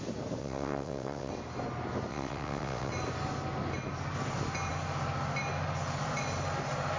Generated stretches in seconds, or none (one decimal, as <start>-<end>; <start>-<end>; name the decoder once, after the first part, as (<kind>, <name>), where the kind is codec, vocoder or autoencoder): 0.4-1.3 (vocoder, WaveNeXt); 2.1-2.9